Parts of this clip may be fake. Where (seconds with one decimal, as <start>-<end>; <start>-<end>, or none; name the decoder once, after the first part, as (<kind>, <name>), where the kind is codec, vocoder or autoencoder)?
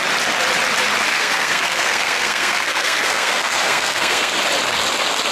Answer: 1.1-4.3 (codec, SNAC)